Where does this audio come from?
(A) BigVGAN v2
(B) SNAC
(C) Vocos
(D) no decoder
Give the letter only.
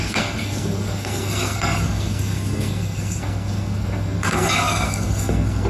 B